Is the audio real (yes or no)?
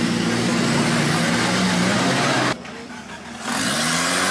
yes